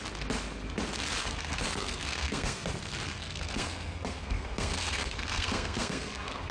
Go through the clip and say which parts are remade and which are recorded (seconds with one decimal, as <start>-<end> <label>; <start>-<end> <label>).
0.0-1.2 recorded; 1.2-2.7 remade; 2.7-3.1 recorded; 3.1-6.5 remade